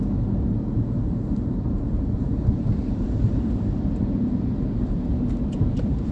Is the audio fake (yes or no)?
yes